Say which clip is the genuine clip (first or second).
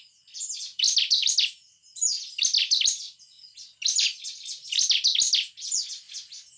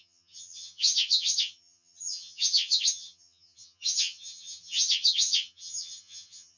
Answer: first